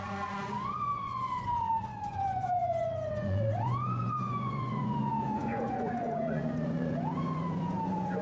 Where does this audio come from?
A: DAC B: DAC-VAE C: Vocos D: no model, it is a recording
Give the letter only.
C